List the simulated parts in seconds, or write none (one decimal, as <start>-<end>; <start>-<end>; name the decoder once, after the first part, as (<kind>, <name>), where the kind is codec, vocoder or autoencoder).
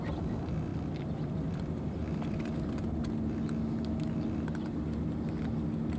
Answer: 0.7-3.0 (vocoder, BigVGAN v2)